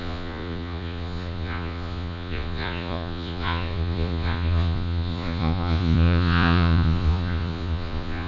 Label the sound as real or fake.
fake